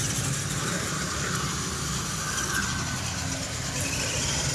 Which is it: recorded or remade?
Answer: recorded